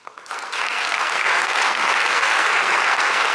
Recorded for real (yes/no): no